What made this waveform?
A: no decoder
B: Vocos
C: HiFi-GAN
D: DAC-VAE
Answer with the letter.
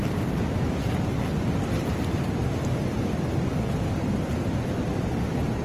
A